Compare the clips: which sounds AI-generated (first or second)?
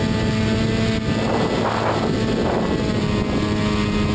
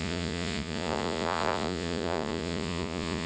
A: second